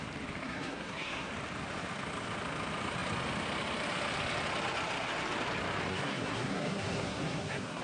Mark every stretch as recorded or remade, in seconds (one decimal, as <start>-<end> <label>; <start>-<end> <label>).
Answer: 0.0-0.4 recorded; 0.4-1.3 remade; 1.3-5.9 recorded; 5.9-7.8 remade